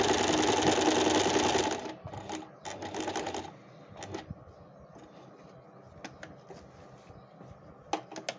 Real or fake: real